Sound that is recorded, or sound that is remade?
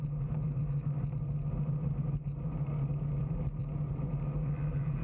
recorded